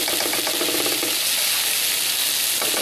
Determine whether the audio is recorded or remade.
recorded